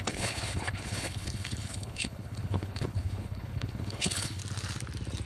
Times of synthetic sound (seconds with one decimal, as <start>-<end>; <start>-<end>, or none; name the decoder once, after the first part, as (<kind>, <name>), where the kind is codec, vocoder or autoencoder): 0.0-4.4 (codec, HILCodec)